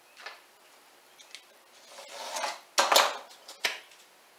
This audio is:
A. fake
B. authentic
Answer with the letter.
B